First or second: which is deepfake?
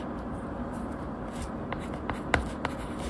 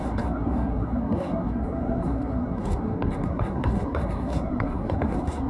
second